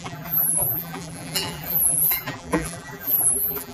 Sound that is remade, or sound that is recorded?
remade